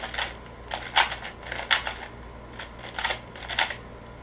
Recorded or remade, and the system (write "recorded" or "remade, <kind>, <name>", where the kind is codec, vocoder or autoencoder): recorded